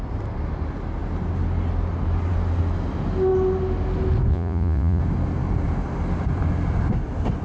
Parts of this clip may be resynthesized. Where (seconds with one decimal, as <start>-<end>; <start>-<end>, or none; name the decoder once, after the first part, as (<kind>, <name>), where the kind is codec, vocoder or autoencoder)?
4.3-5.0 (vocoder, Vocos)